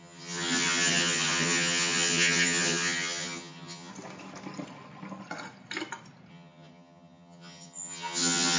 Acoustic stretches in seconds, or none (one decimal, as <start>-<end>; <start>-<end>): 3.9-6.3